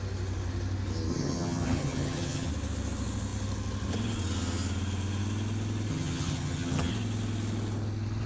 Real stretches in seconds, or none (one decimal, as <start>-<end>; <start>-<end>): 0.0-1.1; 2.5-5.9; 6.9-8.3